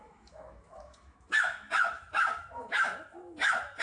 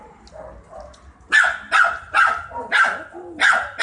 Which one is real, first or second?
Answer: second